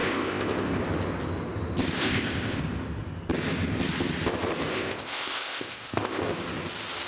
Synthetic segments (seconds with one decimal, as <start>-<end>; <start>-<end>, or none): 0.0-0.8; 2.0-2.6; 4.7-6.2